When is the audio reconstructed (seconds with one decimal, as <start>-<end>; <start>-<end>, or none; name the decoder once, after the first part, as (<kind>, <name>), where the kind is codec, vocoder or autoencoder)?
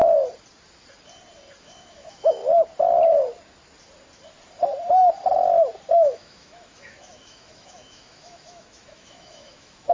1.6-2.4 (autoencoder, DAC-VAE); 5.9-9.9